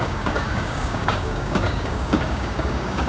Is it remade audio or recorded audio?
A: remade